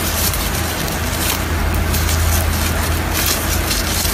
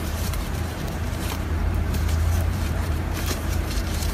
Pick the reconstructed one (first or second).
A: second